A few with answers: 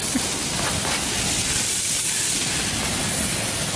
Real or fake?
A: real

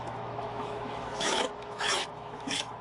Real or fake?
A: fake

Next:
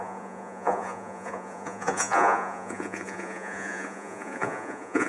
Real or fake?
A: fake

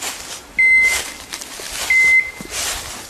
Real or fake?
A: real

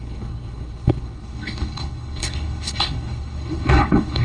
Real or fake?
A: fake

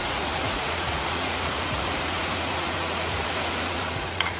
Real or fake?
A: fake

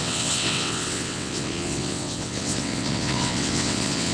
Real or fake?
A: fake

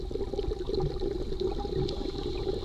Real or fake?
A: real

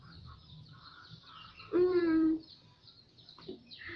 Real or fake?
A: fake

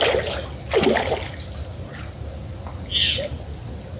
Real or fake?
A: real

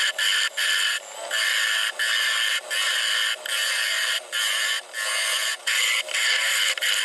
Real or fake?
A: real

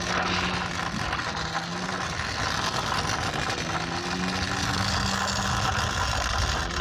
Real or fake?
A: real